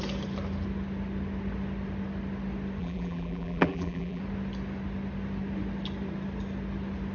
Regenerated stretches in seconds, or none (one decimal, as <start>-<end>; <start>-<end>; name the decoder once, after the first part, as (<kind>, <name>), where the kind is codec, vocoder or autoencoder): 2.8-4.2 (vocoder, BigVGAN v2)